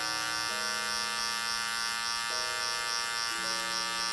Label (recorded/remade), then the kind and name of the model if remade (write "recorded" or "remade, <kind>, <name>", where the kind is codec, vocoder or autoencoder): recorded